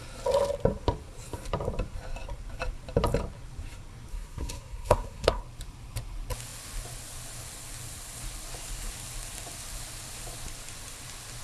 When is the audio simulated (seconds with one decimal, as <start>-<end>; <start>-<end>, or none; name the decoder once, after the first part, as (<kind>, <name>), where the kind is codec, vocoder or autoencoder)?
4.1-5.4 (codec, SNAC)